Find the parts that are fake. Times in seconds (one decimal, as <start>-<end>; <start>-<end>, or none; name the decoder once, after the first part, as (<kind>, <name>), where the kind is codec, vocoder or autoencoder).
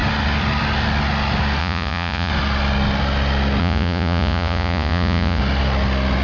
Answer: 1.6-2.3 (vocoder, Vocos); 3.6-5.4